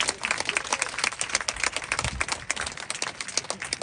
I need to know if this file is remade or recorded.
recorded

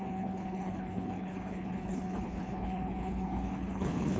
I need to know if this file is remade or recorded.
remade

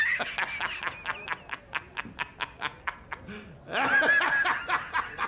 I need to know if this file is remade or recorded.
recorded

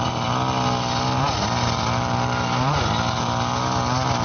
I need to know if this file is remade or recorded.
recorded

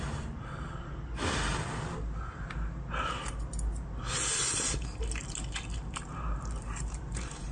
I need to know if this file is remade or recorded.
recorded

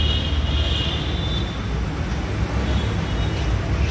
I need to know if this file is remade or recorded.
recorded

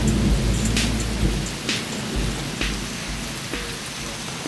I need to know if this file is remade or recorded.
recorded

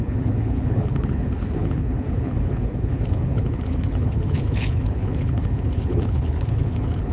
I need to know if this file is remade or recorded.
remade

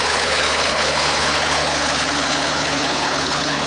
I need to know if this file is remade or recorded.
remade